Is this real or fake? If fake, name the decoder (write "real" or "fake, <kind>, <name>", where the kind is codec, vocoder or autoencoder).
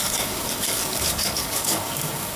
fake, codec, DAC